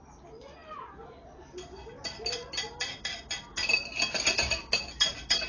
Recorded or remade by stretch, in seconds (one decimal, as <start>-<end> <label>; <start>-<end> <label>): 0.0-5.5 recorded